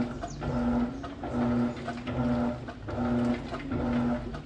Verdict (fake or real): real